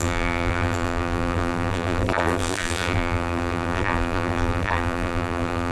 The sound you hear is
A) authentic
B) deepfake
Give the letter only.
B